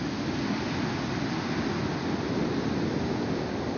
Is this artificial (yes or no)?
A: no